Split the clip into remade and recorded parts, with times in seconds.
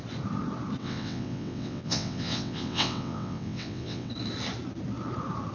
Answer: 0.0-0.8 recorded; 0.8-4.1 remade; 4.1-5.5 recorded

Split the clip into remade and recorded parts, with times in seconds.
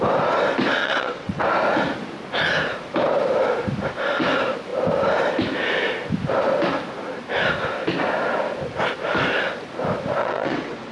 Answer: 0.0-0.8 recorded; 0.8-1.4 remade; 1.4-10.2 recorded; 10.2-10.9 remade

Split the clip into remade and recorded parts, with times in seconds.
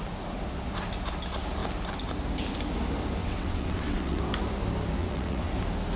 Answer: 0.0-3.2 recorded; 3.2-4.2 remade; 4.2-5.0 recorded; 5.0-5.5 remade; 5.5-6.0 recorded